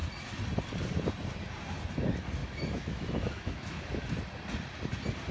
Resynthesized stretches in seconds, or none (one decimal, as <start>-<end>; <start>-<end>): 2.4-4.1